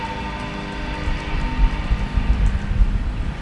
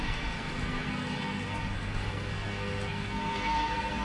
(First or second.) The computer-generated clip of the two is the second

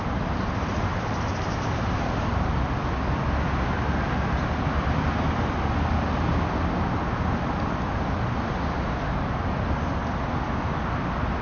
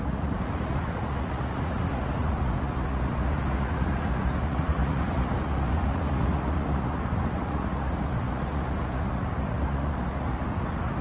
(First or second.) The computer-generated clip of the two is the second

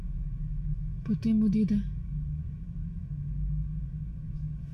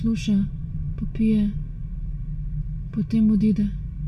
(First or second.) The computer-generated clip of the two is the first